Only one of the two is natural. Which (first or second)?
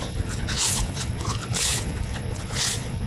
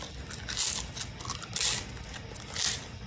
second